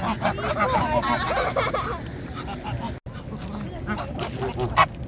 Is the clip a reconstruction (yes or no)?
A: no